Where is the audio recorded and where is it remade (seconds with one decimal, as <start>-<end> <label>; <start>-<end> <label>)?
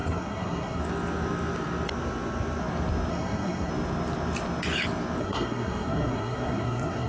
0.0-0.8 remade; 0.8-3.1 recorded; 3.1-3.7 remade; 3.7-5.2 recorded; 5.2-7.1 remade